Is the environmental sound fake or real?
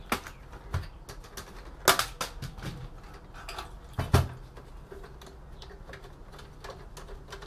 real